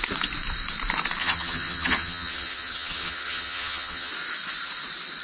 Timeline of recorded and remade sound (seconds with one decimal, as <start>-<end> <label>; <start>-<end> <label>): 0.0-1.2 recorded; 1.2-4.1 remade; 4.1-5.2 recorded